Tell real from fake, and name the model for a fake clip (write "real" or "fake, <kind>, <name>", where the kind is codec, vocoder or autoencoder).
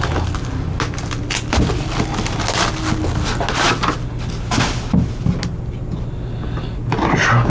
real